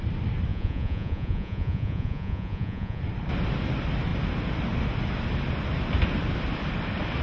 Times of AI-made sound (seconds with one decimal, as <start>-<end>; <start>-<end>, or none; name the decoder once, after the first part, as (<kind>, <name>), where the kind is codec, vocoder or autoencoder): 0.5-3.0 (vocoder, Vocos)